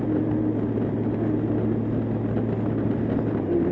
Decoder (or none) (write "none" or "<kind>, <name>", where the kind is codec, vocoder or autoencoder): none